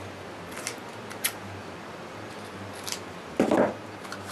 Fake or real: real